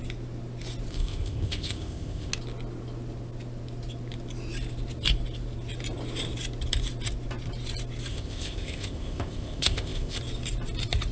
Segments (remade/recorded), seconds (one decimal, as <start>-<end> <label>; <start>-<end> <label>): 0.0-0.9 recorded; 0.9-2.3 remade; 2.3-8.1 recorded; 8.1-10.2 remade; 10.2-11.1 recorded